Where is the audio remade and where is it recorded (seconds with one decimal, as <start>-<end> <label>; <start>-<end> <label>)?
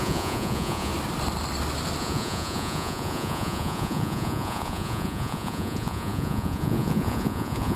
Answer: 0.0-0.9 remade; 0.9-2.0 recorded; 2.0-7.8 remade